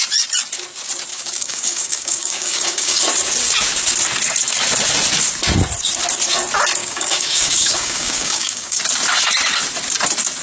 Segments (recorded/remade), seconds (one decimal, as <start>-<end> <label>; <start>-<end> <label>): 0.0-1.1 recorded; 1.1-3.0 remade; 3.0-6.8 recorded; 6.8-8.8 remade; 8.8-10.4 recorded